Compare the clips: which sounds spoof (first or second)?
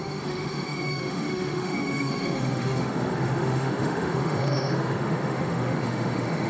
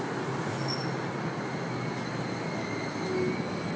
first